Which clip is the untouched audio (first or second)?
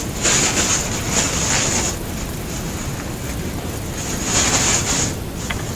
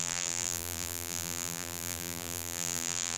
first